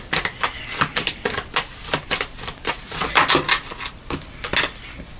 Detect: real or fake real